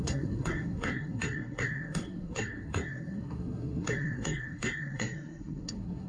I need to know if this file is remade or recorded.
remade